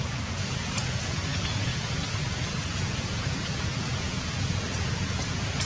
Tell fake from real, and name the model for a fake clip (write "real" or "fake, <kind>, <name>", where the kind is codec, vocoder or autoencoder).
fake, vocoder, Vocos